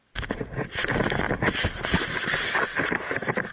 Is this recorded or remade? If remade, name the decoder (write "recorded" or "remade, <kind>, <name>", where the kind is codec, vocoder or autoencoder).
recorded